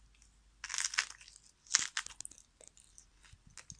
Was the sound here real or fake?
real